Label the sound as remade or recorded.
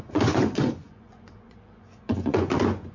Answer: remade